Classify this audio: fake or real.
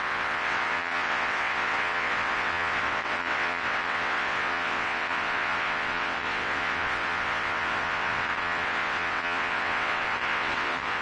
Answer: fake